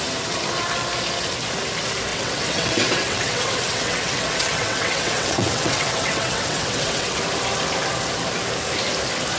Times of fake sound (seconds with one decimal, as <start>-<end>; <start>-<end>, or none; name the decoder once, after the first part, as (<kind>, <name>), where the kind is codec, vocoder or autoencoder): 2.1-7.2 (vocoder, WaveNeXt)